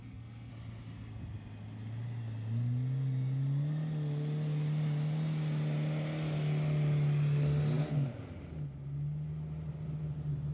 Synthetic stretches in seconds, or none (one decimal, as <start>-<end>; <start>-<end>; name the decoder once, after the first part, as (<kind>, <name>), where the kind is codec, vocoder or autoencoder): 0.0-0.5 (codec, SNAC)